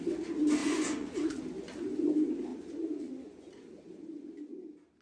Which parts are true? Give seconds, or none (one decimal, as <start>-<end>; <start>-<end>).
0.0-0.6; 1.4-2.5; 3.5-5.0